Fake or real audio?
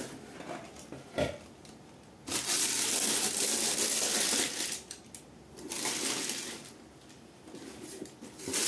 real